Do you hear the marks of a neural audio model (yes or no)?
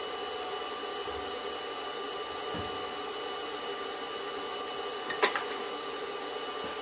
no